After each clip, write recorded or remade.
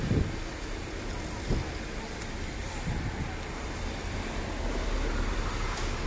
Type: recorded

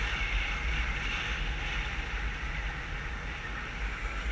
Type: recorded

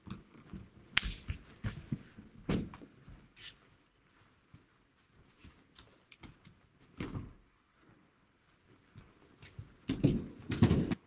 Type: recorded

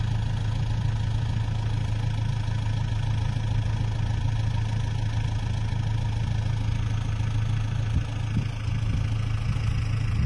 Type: recorded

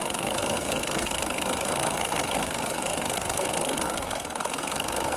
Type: remade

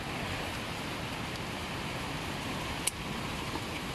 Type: recorded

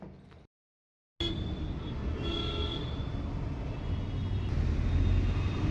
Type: recorded